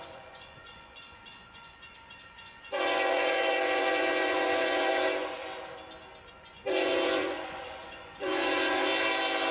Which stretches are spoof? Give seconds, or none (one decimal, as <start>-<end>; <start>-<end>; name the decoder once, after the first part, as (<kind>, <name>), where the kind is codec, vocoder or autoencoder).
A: 0.0-5.4 (vocoder, Vocos); 6.2-8.9